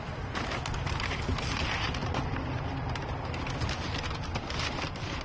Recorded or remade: recorded